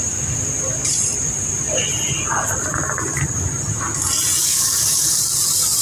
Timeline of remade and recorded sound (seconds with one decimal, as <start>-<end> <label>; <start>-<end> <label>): 0.0-4.4 recorded; 4.4-5.2 remade; 5.2-5.8 recorded